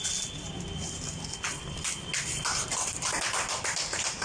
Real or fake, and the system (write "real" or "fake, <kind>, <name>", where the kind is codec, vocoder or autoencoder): real